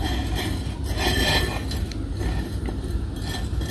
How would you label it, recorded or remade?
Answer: recorded